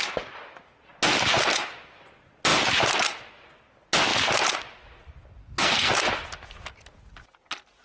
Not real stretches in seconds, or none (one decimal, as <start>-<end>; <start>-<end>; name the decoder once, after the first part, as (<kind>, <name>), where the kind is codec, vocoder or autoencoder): 5.4-5.9 (codec, SNAC)